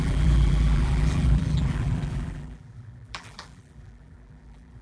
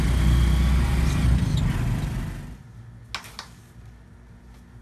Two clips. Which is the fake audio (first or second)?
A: first